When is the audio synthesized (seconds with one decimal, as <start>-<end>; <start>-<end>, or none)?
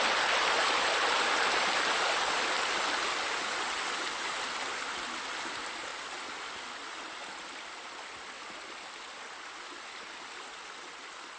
none